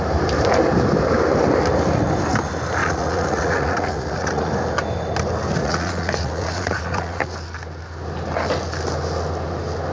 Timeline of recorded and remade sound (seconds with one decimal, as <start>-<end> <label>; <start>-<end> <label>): 0.0-2.8 recorded; 2.8-4.5 remade; 4.5-5.6 recorded; 5.6-7.3 remade; 7.3-9.9 recorded